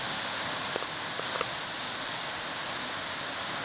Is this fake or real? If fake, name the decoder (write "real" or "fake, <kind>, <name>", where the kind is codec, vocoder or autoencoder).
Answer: real